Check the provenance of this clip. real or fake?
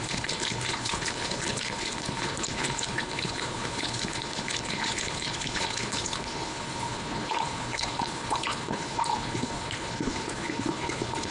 fake